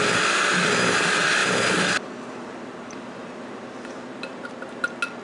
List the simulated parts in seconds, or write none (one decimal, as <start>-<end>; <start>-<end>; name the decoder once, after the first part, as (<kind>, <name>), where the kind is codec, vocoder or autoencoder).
1.4-4.5 (vocoder, BigVGAN v2)